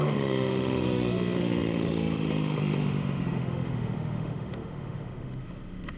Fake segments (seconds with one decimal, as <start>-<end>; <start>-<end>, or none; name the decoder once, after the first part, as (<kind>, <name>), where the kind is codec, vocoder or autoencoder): 0.0-6.0 (autoencoder, DAC-VAE)